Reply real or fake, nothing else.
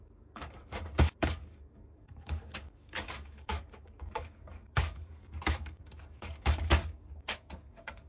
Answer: fake